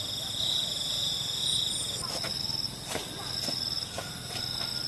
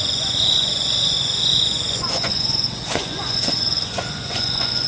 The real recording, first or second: first